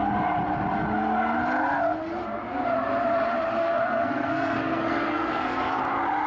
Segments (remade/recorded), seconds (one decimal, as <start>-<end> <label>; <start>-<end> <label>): 0.0-3.6 recorded; 3.6-5.8 remade; 5.8-6.3 recorded